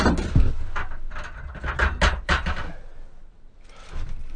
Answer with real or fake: real